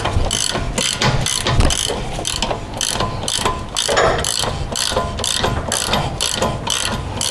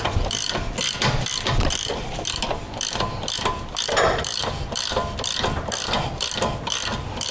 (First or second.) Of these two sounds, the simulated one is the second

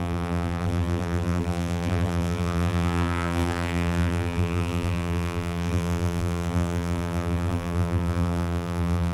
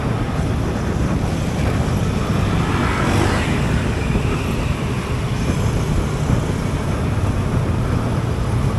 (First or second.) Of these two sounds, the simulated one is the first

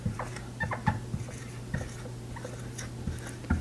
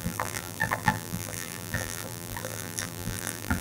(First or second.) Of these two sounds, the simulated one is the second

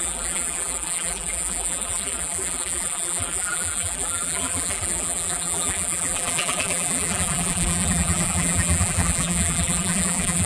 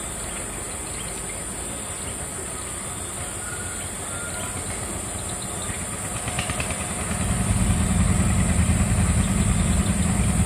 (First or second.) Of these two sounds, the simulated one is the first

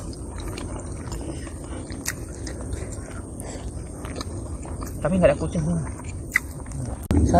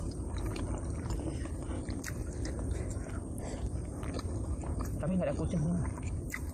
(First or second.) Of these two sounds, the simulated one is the second